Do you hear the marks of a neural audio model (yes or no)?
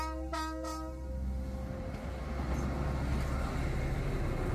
no